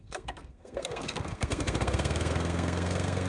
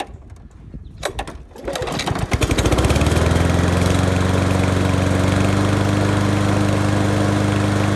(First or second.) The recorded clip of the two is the second